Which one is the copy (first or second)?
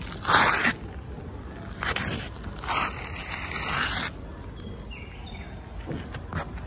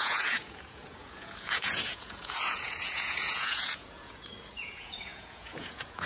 second